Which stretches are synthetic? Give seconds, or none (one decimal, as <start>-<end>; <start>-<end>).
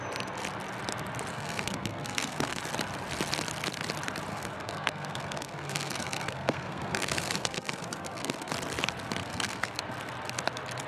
1.3-2.6; 4.3-8.5; 9.2-9.8